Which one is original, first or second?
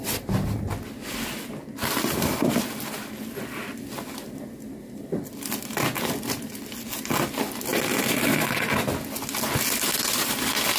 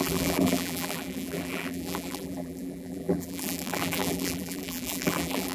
first